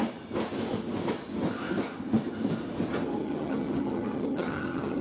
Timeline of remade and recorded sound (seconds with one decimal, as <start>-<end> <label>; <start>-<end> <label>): 0.0-3.2 recorded; 3.2-5.0 remade